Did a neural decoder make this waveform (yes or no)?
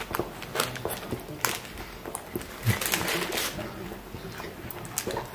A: no